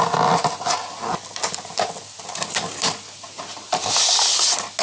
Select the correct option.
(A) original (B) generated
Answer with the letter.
A